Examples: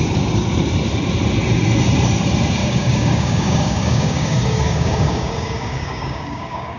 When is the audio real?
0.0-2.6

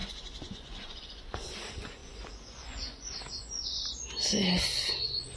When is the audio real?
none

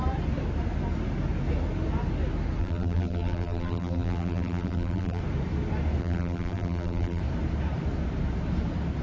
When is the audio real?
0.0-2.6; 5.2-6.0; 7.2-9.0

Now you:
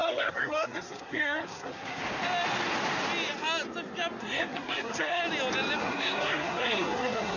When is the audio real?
2.0-4.2; 5.2-5.8

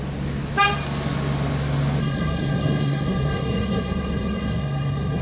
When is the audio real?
0.0-2.0

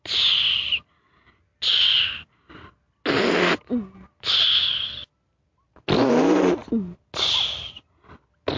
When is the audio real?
0.0-8.6